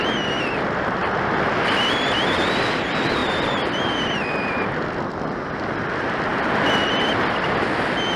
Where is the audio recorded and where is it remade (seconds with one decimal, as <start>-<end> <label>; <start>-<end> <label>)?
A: 0.0-8.2 recorded